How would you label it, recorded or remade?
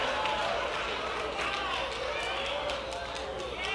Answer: recorded